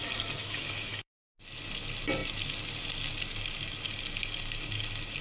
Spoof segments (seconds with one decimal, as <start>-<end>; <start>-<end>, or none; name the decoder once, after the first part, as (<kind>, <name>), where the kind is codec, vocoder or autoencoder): 0.4-1.3 (autoencoder, DAC-VAE)